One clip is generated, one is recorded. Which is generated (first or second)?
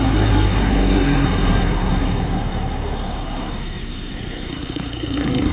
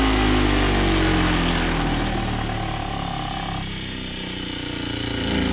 first